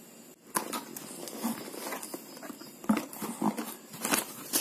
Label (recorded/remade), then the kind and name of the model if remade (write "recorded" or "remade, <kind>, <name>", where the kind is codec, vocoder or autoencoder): recorded